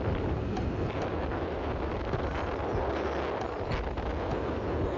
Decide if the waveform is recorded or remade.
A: recorded